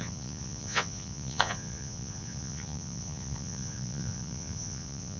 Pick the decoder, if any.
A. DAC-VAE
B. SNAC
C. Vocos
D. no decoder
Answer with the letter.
C